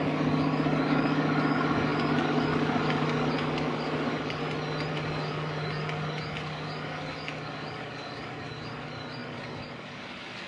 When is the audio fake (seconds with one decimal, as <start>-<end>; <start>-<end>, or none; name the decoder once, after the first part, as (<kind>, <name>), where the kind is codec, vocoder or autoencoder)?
0.0-4.4 (codec, DAC); 4.9-10.5